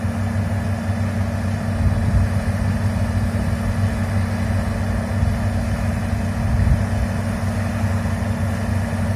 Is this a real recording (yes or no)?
yes